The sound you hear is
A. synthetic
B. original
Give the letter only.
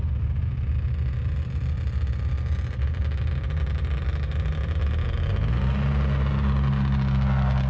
B